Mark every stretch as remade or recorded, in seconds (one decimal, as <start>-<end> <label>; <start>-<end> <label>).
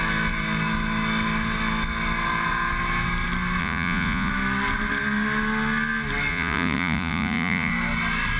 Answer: 0.0-3.6 recorded; 3.6-4.3 remade; 4.3-6.3 recorded; 6.3-7.7 remade; 7.7-8.4 recorded